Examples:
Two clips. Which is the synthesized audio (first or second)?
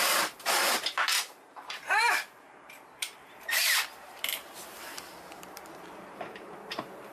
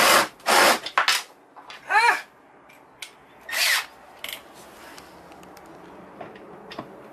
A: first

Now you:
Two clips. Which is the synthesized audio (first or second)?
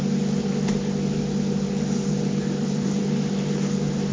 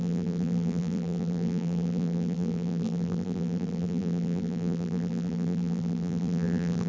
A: second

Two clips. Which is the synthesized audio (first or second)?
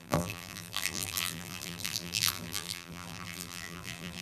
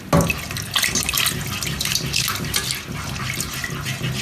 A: first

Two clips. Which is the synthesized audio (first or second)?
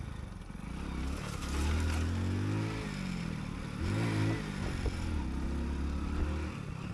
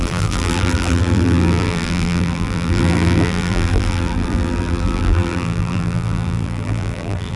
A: second